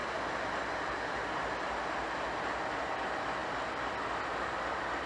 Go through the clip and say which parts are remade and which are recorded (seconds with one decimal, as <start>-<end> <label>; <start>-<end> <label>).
0.0-5.1 recorded